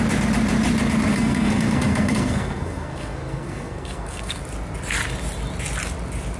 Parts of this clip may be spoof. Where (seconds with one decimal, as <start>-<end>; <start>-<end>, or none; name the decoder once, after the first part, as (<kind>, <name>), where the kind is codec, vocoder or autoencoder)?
1.1-4.4 (codec, SNAC)